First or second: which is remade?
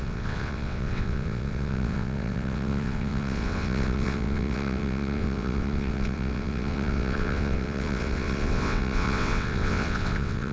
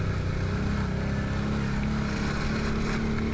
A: first